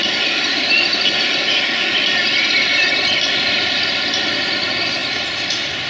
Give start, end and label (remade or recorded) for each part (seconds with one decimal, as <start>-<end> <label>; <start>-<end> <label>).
0.0-5.9 recorded